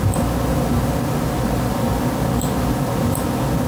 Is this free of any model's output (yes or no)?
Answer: yes